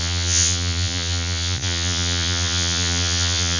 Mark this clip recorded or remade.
remade